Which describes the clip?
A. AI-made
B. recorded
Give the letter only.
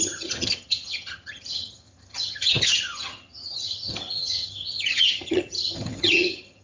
A